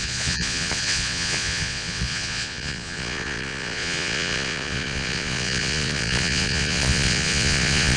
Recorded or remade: remade